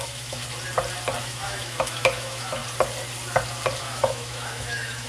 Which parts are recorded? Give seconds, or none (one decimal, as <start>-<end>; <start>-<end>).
0.4-1.2; 2.6-3.8